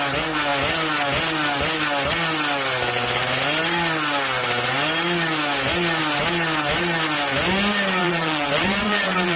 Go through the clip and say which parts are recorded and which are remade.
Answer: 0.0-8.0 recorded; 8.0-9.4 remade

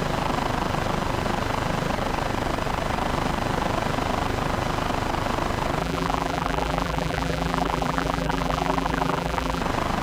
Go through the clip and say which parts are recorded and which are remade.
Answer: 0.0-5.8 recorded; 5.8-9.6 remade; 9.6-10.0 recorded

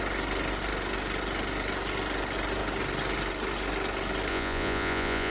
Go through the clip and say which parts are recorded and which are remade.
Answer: 0.0-4.3 recorded; 4.3-5.3 remade

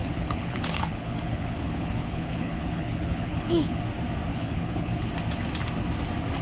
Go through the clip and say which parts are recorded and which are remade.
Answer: 0.0-3.8 remade; 3.8-4.3 recorded; 4.3-5.1 remade; 5.1-6.4 recorded

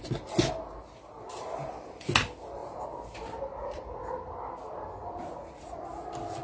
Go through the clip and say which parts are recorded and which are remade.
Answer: 0.0-6.4 recorded